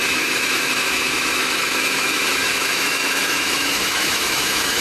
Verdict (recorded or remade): remade